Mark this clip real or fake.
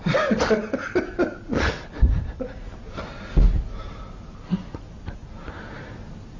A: real